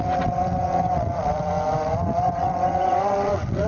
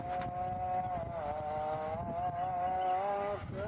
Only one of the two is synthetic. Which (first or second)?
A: first